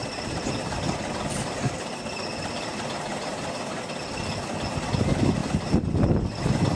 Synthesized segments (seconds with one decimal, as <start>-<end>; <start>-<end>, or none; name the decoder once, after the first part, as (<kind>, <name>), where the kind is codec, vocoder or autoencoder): 0.0-4.1 (vocoder, BigVGAN v2); 5.4-6.1